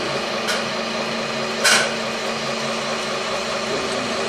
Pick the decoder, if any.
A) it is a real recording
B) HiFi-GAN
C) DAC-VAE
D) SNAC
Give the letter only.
A